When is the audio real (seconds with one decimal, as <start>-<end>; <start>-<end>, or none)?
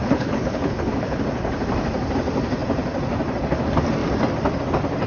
1.2-5.1